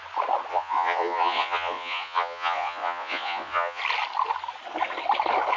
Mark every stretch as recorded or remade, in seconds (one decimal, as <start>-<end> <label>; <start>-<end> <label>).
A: 0.0-0.5 recorded; 0.5-3.8 remade; 3.8-5.6 recorded